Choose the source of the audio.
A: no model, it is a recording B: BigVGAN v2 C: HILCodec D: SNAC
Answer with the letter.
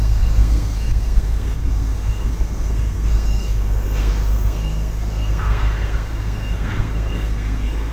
D